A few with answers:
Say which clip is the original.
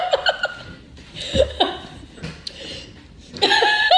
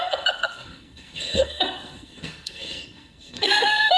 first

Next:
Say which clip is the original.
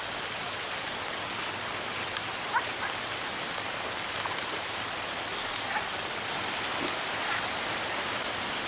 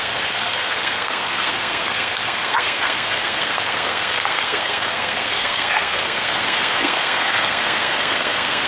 first